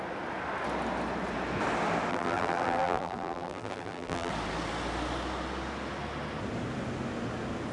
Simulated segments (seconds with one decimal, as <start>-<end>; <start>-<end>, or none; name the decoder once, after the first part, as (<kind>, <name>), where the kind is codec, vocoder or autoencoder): 2.1-4.3 (vocoder, BigVGAN v2)